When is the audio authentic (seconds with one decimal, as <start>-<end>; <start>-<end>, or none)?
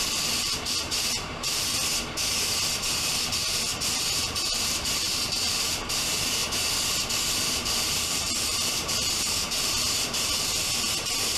1.7-2.8; 6.4-7.5